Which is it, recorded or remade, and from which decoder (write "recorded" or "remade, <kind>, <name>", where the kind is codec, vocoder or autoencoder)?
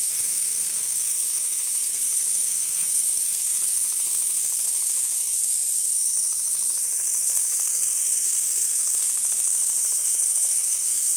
remade, codec, SNAC